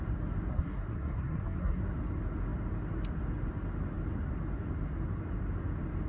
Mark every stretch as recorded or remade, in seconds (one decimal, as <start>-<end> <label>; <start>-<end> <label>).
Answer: 0.0-0.5 recorded; 0.5-1.8 remade; 1.8-6.1 recorded